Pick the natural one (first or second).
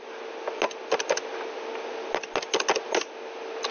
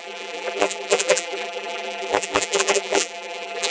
first